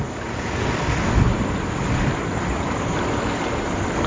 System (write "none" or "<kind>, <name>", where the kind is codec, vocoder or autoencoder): none